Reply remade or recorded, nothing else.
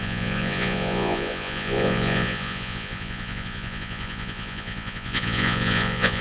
remade